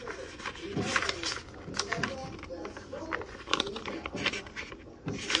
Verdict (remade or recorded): recorded